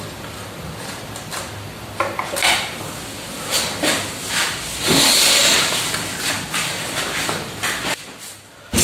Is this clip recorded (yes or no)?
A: yes